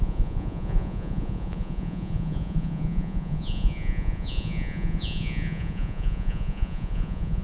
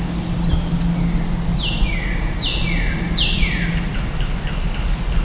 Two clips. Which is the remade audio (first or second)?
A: first